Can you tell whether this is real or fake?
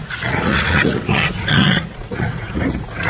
fake